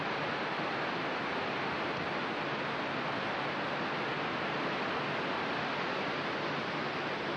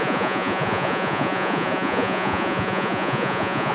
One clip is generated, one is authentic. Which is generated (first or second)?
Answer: second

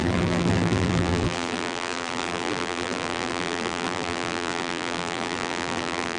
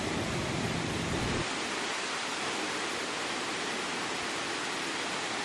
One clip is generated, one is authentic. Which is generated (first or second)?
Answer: first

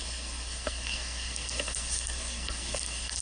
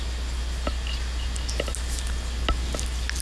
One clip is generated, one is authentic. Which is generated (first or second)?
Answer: first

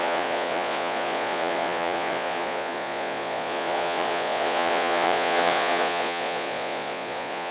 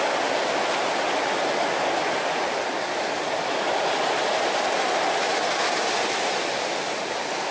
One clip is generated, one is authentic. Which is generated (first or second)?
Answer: first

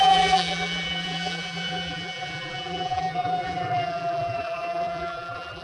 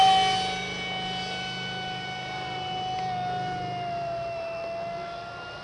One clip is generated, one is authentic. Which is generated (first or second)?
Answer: first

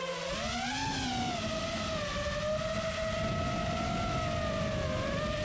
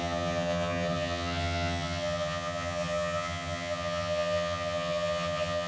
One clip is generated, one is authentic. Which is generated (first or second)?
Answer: second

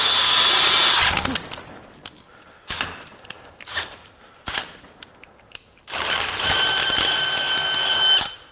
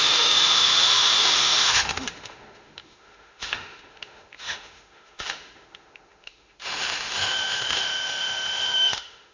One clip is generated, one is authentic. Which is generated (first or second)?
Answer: second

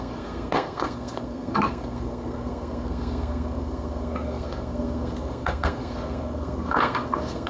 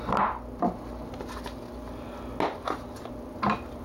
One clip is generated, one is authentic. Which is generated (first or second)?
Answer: first